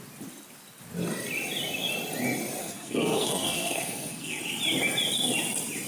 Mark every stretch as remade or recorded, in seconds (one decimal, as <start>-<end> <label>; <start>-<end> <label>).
0.0-2.6 recorded; 2.6-4.4 remade; 4.4-5.9 recorded